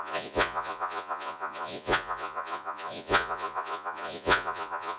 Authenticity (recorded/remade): remade